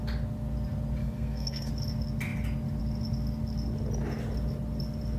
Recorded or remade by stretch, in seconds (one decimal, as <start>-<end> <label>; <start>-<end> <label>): 0.0-1.0 recorded; 1.0-1.7 remade; 1.7-5.2 recorded